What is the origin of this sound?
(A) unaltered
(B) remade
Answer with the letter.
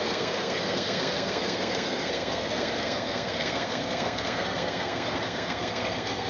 B